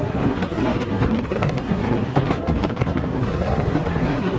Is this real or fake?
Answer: fake